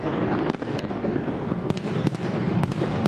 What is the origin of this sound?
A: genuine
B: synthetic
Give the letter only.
B